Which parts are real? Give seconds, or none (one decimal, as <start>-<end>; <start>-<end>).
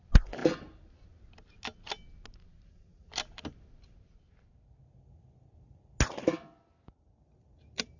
0.0-8.0